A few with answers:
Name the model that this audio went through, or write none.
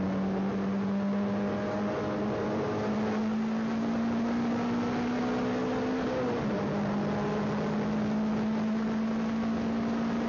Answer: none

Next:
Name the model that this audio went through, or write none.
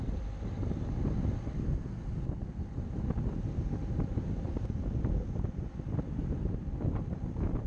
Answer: none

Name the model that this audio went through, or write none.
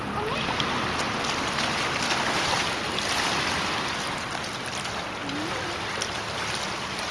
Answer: none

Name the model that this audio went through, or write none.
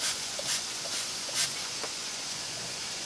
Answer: vocoder, Vocos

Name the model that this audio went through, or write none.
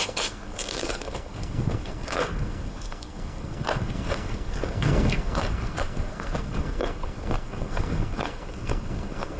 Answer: codec, SNAC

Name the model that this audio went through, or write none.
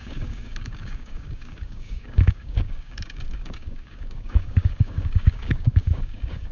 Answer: codec, DAC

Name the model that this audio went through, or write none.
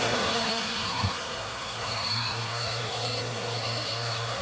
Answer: codec, SNAC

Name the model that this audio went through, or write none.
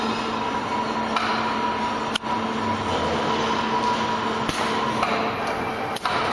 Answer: none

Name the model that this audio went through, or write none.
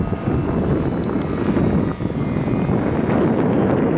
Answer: none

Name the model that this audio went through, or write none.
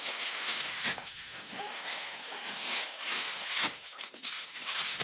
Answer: autoencoder, DAC-VAE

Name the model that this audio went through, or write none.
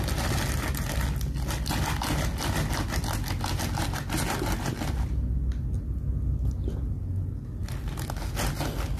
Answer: none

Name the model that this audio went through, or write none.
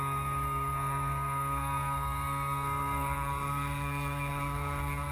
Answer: codec, SNAC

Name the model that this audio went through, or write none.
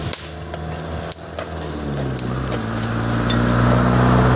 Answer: none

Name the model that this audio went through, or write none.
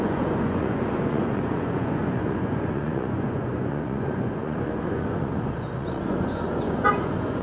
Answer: vocoder, Vocos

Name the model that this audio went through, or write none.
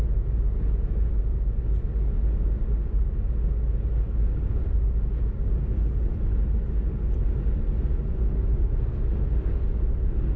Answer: none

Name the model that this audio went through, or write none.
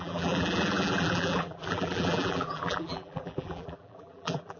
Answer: vocoder, BigVGAN v2